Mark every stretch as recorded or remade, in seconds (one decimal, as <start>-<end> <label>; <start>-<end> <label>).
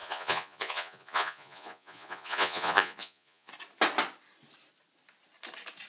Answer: 0.0-3.5 remade; 3.5-5.9 recorded